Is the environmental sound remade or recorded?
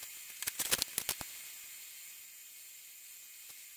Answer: recorded